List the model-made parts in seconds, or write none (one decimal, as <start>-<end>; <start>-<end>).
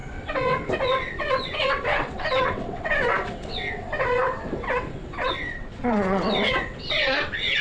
0.0-7.6